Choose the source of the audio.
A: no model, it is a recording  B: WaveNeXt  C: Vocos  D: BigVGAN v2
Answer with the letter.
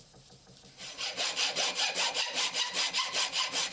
D